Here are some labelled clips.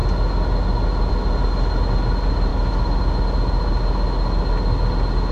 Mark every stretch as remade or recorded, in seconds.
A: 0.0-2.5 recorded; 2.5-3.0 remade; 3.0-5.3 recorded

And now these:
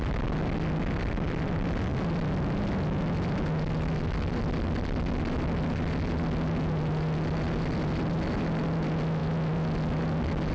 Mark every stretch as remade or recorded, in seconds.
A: 0.0-10.5 recorded

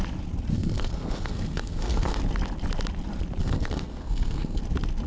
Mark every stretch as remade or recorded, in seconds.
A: 0.0-0.5 recorded; 0.5-2.2 remade; 2.2-3.4 recorded; 3.4-4.6 remade; 4.6-5.1 recorded

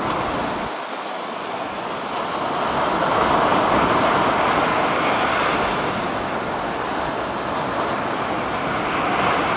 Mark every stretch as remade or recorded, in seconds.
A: 0.0-4.7 recorded; 4.7-5.5 remade; 5.5-9.6 recorded

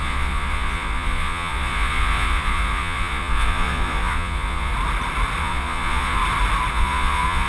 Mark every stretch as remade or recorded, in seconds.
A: 0.0-4.7 remade; 4.7-5.4 recorded; 5.4-6.2 remade; 6.2-6.7 recorded; 6.7-7.5 remade